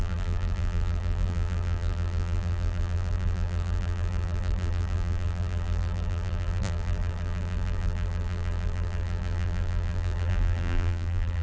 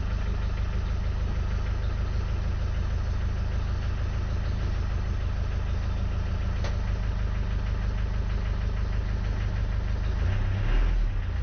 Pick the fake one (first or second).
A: first